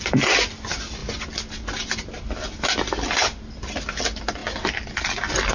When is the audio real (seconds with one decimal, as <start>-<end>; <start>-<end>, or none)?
0.0-5.5